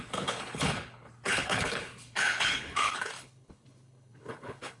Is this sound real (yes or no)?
no